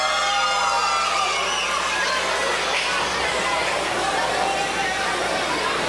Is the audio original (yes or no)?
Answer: yes